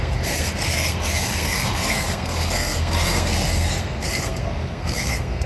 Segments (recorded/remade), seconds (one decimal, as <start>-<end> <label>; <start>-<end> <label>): 0.0-5.5 remade